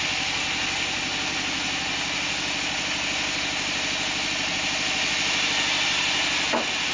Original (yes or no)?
yes